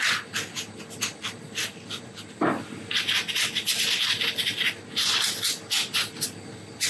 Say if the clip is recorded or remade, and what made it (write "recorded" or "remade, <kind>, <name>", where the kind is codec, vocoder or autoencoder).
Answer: recorded